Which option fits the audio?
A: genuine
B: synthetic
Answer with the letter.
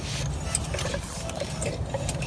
A